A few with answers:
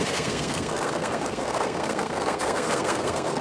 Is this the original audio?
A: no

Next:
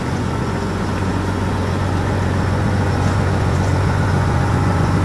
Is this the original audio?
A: no